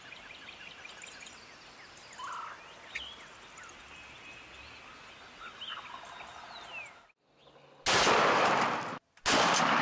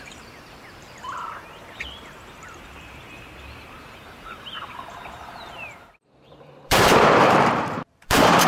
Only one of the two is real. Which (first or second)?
first